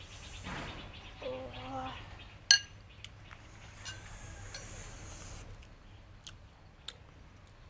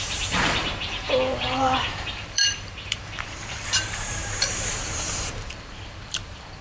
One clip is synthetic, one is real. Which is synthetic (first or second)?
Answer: second